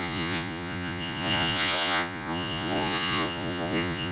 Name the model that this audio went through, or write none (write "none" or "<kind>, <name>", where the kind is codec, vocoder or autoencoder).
vocoder, Vocos